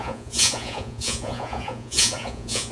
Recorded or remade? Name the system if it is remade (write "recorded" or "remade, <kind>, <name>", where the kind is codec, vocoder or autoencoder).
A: remade, vocoder, Vocos